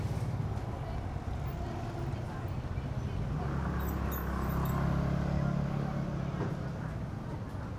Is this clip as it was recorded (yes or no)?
yes